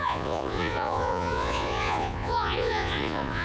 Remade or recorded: remade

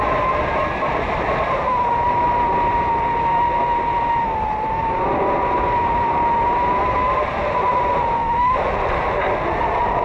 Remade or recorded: recorded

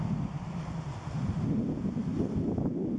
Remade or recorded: recorded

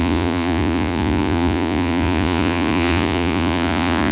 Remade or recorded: remade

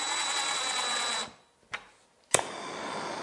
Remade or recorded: recorded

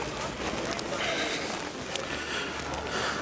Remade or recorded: recorded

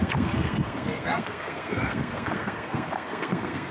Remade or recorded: remade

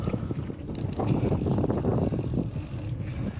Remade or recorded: recorded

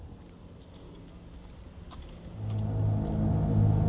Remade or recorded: recorded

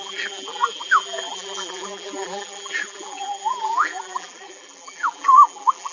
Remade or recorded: remade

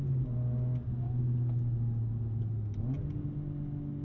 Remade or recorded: recorded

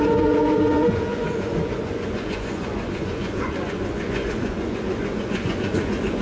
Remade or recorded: remade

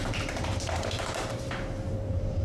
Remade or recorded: remade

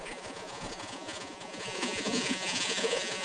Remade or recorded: remade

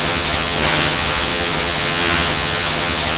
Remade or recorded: remade